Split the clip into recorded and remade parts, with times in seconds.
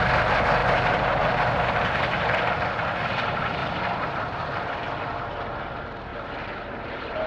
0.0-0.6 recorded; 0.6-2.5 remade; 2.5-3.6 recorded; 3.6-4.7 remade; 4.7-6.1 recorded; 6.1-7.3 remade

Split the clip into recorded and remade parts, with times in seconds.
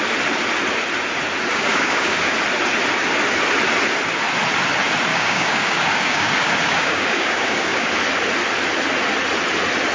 0.0-1.5 recorded; 1.5-2.3 remade; 2.3-5.1 recorded; 5.1-7.9 remade; 7.9-9.9 recorded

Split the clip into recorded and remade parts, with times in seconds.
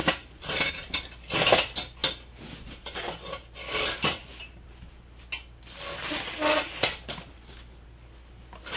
0.0-8.8 recorded